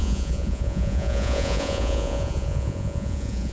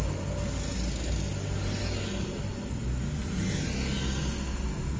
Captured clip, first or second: second